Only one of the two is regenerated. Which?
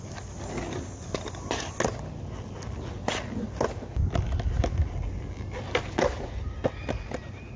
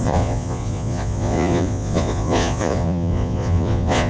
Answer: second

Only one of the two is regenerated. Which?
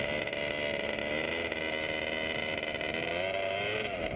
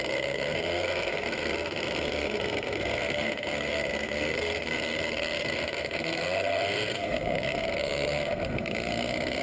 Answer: second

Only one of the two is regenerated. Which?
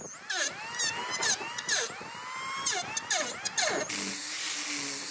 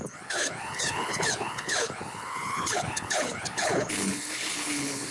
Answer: second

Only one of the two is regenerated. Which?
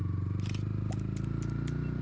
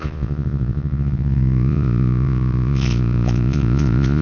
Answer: second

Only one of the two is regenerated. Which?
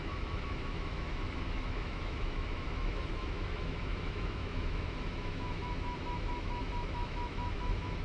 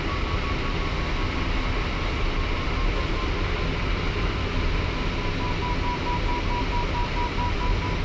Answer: first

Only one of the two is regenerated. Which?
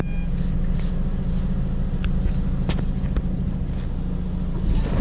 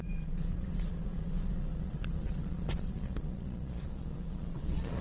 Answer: second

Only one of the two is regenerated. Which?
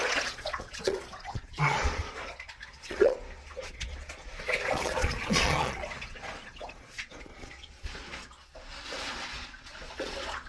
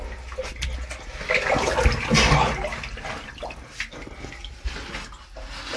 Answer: first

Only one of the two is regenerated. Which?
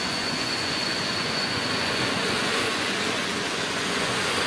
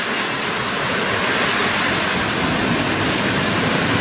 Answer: first